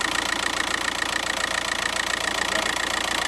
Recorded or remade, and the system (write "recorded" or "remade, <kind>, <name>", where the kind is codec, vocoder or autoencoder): recorded